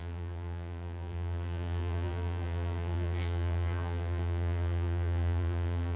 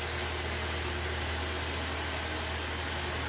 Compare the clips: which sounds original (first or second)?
second